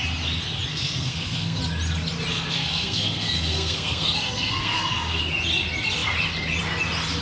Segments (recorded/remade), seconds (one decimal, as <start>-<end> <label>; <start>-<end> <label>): 0.0-0.7 recorded; 0.7-1.6 remade; 1.6-2.3 recorded; 2.3-5.2 remade; 5.2-7.2 recorded